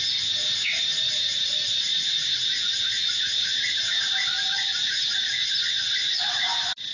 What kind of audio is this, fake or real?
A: real